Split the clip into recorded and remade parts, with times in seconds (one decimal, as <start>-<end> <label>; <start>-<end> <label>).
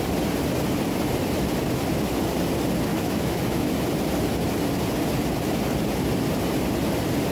0.0-2.9 recorded; 2.9-3.7 remade; 3.7-7.3 recorded